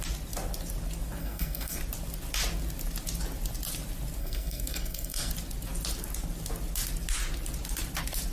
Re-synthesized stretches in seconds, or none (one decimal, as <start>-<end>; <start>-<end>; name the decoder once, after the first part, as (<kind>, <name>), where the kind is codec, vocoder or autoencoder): 1.2-1.8 (codec, SNAC); 4.2-5.3